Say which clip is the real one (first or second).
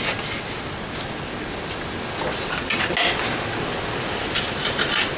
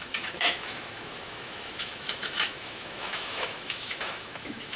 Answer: first